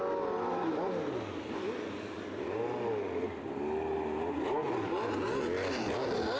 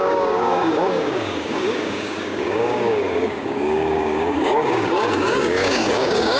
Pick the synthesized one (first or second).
second